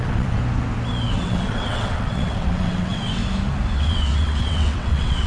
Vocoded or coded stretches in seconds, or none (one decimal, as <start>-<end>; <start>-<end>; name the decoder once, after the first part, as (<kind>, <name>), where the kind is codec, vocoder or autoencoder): 0.0-0.4 (vocoder, WaveNeXt); 1.1-3.2; 3.8-5.3